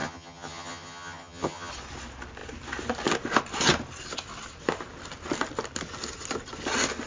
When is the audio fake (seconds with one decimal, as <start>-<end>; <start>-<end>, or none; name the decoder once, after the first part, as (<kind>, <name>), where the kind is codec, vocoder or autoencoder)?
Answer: 0.0-1.7 (vocoder, HiFi-GAN)